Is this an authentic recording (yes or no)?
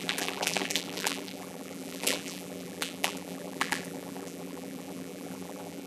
no